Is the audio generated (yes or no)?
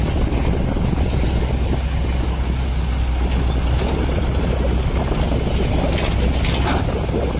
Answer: no